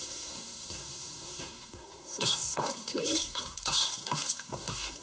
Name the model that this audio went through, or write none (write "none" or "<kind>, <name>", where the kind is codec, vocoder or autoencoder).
codec, SNAC